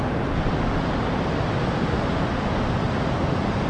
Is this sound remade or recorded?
recorded